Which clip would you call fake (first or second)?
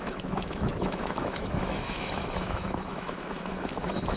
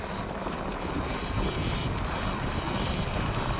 first